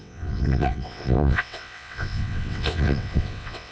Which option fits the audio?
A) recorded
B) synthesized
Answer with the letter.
B